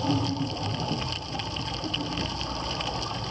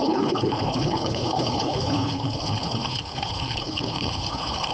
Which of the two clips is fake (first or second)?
second